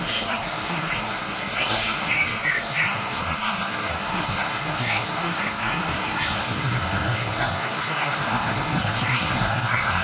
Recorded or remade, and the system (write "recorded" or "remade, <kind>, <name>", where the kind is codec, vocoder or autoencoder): remade, codec, SNAC